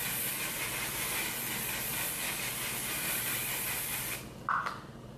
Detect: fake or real real